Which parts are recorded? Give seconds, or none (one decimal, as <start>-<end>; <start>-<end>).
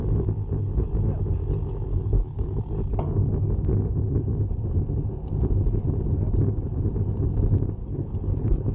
0.0-2.0; 2.6-7.8